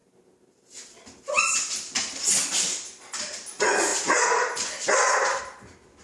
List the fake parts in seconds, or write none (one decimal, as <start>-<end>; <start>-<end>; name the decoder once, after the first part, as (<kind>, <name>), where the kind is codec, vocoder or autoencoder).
1.4-6.0 (vocoder, BigVGAN v2)